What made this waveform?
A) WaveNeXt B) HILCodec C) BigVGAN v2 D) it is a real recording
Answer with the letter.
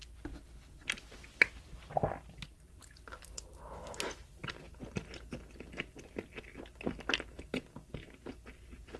D